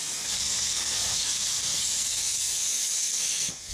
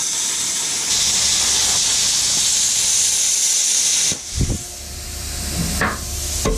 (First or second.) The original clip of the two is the second